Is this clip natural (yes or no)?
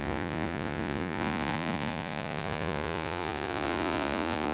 no